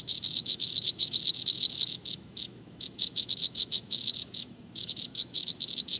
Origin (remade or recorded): remade